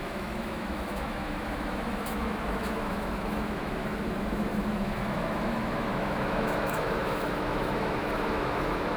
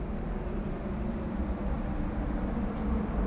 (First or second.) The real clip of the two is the second